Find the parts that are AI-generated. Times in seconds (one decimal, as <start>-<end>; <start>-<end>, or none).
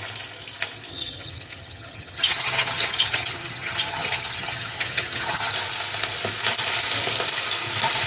0.9-5.5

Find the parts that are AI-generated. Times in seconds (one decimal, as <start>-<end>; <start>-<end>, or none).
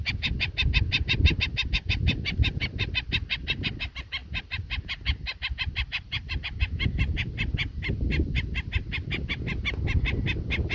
0.0-10.7